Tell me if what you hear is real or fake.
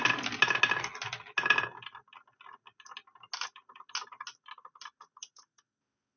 real